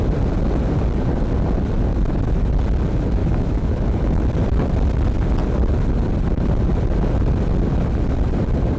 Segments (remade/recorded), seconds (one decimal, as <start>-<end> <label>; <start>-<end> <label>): 0.0-1.9 recorded; 1.9-2.4 remade; 2.4-3.2 recorded; 3.2-4.3 remade; 4.3-8.8 recorded